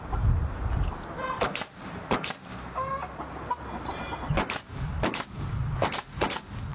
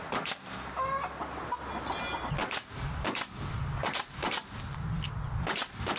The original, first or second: second